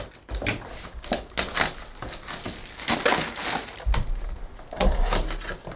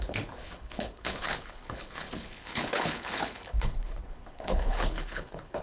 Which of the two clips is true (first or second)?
first